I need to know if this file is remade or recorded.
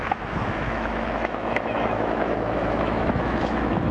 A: remade